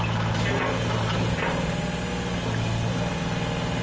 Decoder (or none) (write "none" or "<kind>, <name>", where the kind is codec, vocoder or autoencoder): none